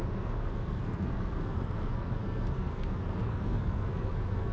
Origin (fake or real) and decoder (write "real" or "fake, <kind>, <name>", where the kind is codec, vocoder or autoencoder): fake, codec, SNAC